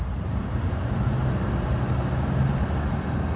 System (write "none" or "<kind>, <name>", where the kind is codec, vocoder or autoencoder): none